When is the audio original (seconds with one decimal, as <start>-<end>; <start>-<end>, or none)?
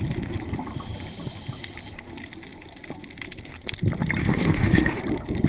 0.0-4.2; 5.0-5.5